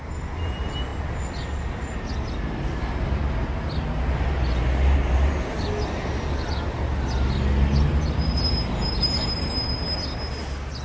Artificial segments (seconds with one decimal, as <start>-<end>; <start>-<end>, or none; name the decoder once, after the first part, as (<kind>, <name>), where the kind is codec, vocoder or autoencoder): none